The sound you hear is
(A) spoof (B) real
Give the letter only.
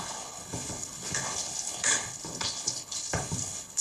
A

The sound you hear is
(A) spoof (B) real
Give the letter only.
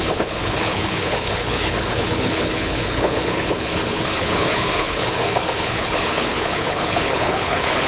A